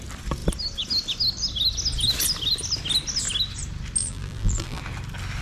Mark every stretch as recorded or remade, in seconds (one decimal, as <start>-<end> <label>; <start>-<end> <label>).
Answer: 0.0-4.0 recorded; 4.0-4.8 remade; 4.8-5.4 recorded